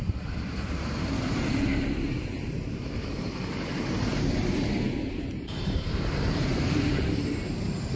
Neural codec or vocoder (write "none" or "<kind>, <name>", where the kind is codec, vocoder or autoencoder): vocoder, BigVGAN v2